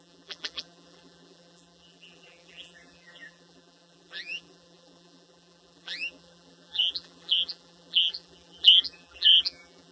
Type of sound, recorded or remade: remade